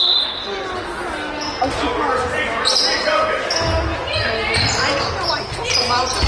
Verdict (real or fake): real